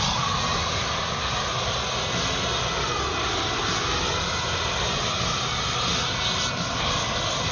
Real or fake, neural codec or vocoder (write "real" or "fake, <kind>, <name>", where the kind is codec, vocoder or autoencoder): real